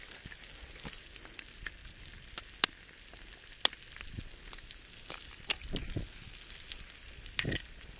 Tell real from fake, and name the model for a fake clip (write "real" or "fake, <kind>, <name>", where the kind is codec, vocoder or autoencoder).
real